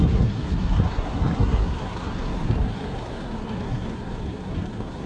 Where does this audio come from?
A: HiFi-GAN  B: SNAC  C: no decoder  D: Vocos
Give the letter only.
B